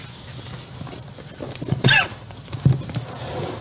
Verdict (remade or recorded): recorded